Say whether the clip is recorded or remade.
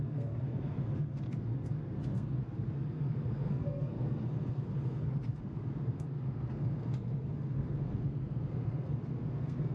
remade